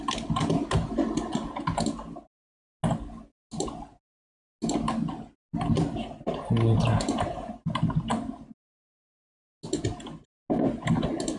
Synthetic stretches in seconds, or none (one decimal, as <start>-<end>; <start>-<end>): none